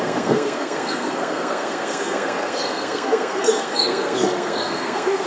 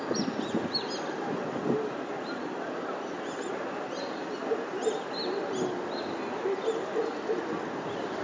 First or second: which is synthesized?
first